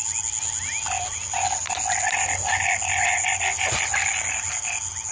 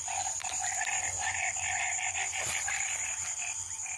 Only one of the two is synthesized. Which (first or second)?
second